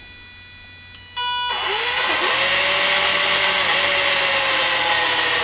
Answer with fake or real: real